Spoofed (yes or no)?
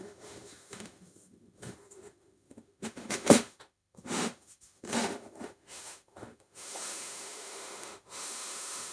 yes